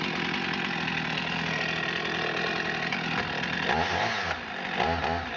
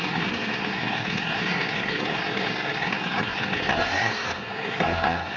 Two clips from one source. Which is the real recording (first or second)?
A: first